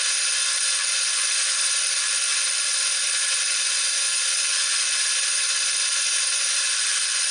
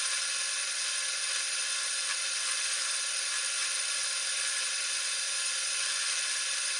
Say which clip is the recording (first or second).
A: first